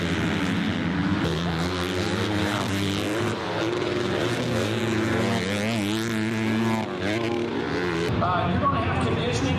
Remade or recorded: recorded